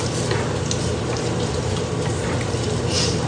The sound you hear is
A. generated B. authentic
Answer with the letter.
B